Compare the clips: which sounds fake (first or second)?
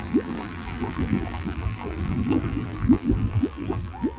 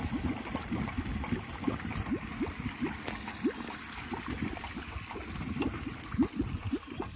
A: first